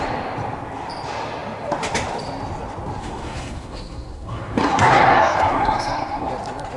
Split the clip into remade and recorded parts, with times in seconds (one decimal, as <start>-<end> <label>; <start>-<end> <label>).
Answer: 0.0-3.0 recorded; 3.0-6.3 remade; 6.3-6.8 recorded